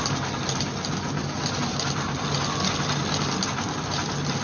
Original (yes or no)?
yes